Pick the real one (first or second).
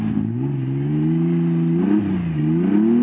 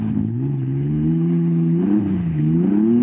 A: first